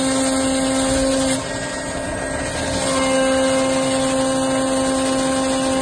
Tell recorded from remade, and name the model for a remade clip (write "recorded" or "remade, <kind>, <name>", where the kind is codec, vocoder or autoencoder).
recorded